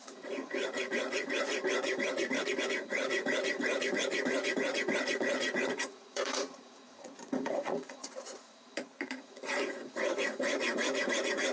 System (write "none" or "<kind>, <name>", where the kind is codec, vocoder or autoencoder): vocoder, Vocos